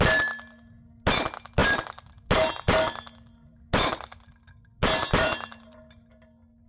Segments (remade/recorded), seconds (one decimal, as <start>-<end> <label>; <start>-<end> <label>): 0.0-5.0 recorded; 5.0-5.8 remade; 5.8-6.7 recorded